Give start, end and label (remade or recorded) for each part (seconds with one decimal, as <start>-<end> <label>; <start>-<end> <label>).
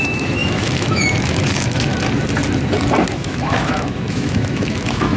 0.0-1.9 remade; 1.9-3.1 recorded; 3.1-5.2 remade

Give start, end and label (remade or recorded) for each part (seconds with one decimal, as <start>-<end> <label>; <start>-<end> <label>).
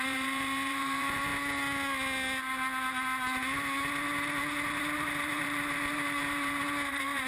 0.0-1.3 remade; 1.3-4.8 recorded; 4.8-7.3 remade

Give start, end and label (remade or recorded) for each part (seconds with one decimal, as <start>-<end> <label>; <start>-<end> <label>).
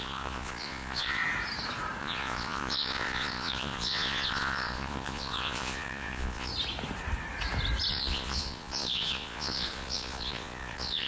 0.0-1.2 remade; 1.2-2.0 recorded; 2.0-6.5 remade; 6.5-7.9 recorded; 7.9-11.1 remade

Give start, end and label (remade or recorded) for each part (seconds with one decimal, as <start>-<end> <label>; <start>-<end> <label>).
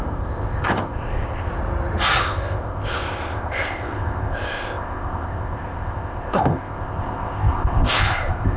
0.0-1.5 remade; 1.5-2.2 recorded; 2.2-8.6 remade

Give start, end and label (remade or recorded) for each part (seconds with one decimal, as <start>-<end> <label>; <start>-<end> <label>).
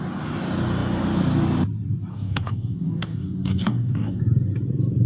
0.0-2.1 recorded; 2.1-4.2 remade; 4.2-5.1 recorded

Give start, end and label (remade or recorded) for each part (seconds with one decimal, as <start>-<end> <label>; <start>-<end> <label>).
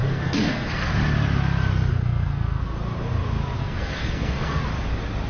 0.0-0.9 remade; 0.9-1.9 recorded; 1.9-2.6 remade; 2.6-3.6 recorded; 3.6-4.6 remade; 4.6-5.3 recorded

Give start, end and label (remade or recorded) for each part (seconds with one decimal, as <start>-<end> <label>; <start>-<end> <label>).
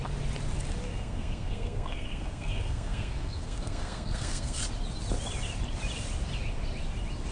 0.0-0.9 recorded; 0.9-4.6 remade; 4.6-7.3 recorded